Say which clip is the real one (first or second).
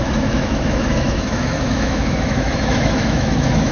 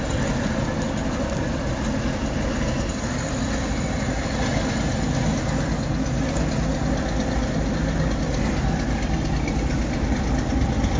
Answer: second